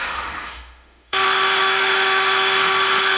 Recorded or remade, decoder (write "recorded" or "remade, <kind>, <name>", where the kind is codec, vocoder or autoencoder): remade, autoencoder, DAC-VAE